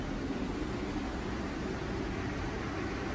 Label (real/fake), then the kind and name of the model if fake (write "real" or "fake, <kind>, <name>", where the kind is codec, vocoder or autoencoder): real